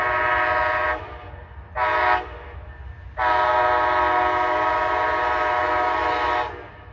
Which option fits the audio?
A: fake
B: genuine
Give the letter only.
B